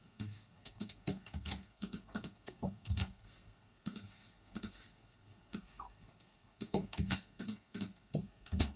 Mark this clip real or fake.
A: fake